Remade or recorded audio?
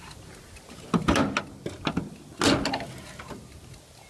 recorded